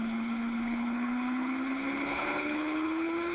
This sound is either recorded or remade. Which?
remade